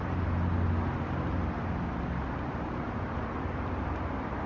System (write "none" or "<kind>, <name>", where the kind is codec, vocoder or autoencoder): none